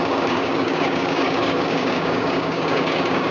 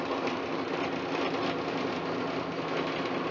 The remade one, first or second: first